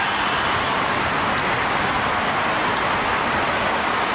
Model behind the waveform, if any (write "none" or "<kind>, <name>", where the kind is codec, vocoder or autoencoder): none